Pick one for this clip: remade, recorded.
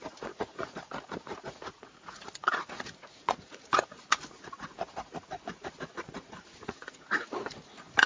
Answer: remade